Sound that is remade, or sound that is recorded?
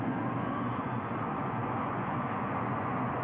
remade